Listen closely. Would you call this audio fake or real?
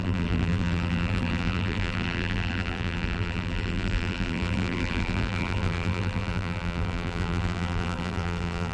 fake